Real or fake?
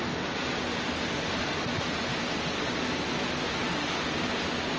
real